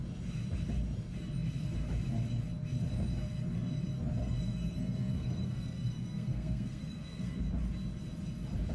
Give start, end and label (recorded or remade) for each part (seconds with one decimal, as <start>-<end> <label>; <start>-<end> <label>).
0.0-4.2 recorded; 4.2-7.4 remade; 7.4-8.7 recorded